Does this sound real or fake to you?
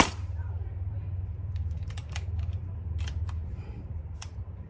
fake